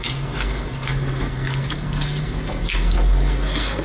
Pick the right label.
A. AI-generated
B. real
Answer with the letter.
A